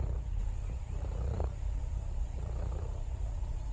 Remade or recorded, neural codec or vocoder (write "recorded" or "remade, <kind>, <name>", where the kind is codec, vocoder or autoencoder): remade, vocoder, Vocos